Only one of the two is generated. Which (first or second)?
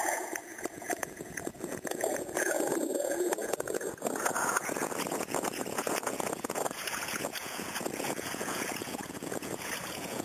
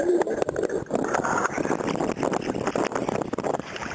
first